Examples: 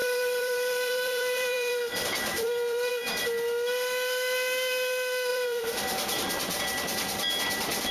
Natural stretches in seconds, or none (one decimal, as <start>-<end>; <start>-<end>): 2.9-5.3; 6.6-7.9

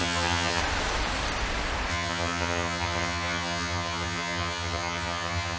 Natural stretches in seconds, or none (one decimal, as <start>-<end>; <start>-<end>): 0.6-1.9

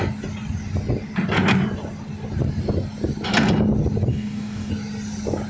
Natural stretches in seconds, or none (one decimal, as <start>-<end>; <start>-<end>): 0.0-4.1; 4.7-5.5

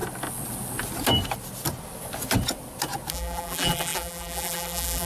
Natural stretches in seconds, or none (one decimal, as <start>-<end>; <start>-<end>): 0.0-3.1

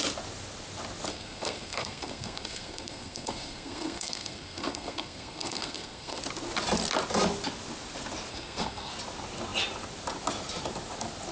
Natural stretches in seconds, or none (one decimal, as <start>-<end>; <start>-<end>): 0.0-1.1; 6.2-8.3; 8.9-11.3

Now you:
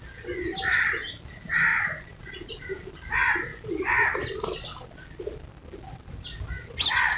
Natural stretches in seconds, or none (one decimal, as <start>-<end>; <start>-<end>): 0.0-0.5; 1.2-1.7; 2.2-7.2

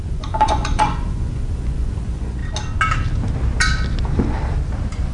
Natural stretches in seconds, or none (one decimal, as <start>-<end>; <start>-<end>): 2.4-5.1